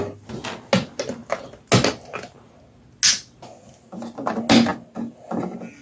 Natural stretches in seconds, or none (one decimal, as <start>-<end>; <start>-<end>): 0.0-5.8